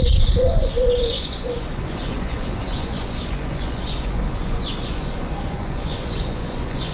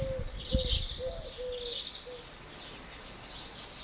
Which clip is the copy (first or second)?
first